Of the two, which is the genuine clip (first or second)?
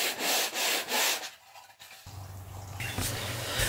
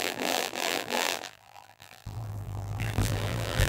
first